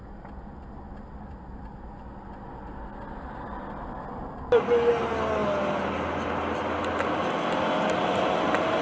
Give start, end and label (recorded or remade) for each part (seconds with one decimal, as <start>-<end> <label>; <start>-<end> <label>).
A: 0.0-8.8 recorded